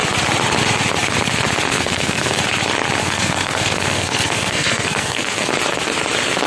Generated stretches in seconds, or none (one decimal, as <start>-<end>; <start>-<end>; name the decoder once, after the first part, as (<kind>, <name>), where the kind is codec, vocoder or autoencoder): 1.7-2.4 (codec, SNAC); 3.0-5.5